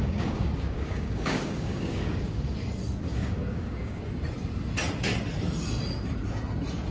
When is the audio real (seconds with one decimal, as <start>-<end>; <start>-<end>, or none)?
2.5-3.1; 4.0-6.9